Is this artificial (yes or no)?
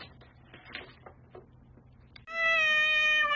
no